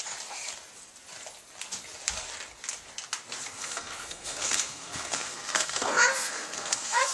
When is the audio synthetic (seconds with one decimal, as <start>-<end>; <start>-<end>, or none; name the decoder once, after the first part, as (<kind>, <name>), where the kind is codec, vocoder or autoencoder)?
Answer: 3.5-7.1 (codec, SNAC)